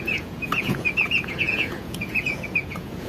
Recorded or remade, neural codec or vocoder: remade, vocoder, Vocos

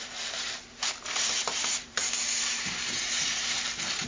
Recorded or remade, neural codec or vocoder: remade, vocoder, BigVGAN v2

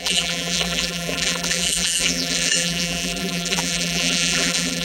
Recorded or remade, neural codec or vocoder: remade, vocoder, BigVGAN v2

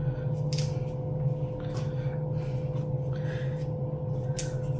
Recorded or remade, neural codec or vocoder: recorded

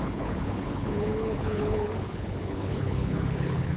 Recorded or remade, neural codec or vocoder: remade, codec, HILCodec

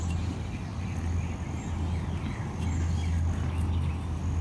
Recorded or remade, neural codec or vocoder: remade, vocoder, BigVGAN v2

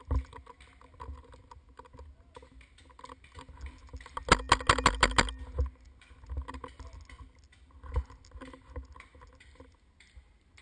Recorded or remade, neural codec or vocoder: recorded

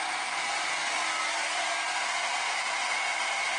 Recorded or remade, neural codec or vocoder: recorded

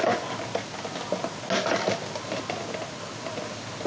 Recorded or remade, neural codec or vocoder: recorded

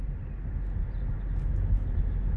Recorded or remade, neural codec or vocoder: recorded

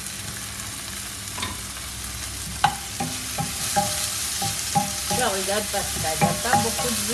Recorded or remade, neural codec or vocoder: recorded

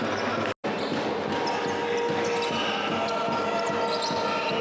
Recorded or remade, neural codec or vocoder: recorded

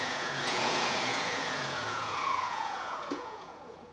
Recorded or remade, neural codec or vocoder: remade, vocoder, Vocos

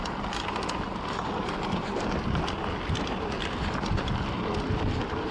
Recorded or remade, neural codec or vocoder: recorded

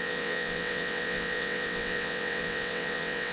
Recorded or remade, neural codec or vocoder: remade, vocoder, WaveNeXt